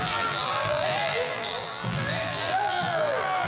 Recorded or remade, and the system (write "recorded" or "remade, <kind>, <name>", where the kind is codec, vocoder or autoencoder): remade, vocoder, BigVGAN v2